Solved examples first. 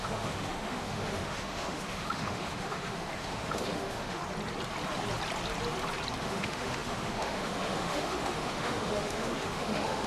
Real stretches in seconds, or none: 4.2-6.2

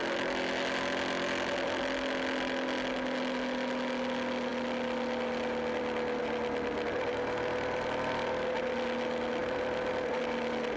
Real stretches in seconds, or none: 0.0-10.8

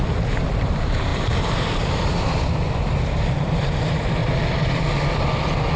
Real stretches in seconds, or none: 4.2-5.8

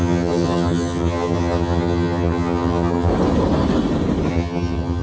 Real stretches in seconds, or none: 3.1-4.3

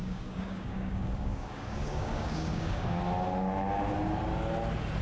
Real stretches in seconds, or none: 3.0-5.0